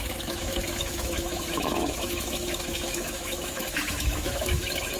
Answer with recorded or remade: remade